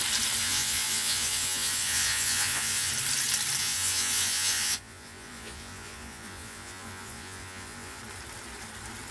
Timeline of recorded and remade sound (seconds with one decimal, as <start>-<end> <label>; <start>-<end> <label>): 0.0-0.4 recorded; 0.4-2.9 remade; 2.9-3.6 recorded; 3.6-8.0 remade; 8.0-9.1 recorded